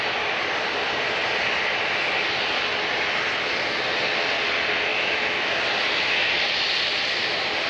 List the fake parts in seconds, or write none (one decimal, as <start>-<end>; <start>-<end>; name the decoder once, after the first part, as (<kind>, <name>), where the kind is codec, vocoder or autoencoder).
4.9-5.5 (autoencoder, DAC-VAE)